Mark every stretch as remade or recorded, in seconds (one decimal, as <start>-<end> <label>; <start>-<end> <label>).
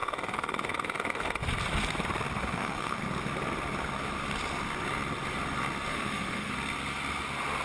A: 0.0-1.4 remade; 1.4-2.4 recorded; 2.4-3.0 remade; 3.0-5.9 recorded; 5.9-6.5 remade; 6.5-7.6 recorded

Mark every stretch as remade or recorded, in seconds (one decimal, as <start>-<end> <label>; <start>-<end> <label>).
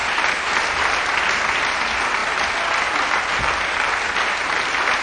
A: 0.0-2.2 recorded; 2.2-3.4 remade; 3.4-5.0 recorded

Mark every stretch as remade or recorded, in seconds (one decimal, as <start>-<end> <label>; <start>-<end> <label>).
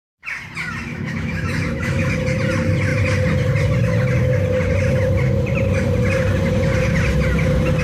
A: 0.0-0.9 recorded; 0.9-2.1 remade; 2.1-7.8 recorded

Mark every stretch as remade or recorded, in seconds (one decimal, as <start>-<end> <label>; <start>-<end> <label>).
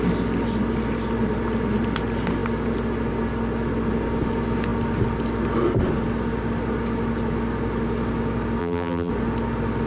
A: 0.0-8.6 recorded; 8.6-9.1 remade; 9.1-9.9 recorded